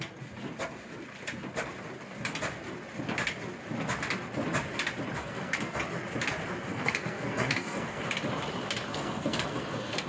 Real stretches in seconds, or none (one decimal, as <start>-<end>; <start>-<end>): 0.0-5.2; 5.8-6.7; 8.0-8.9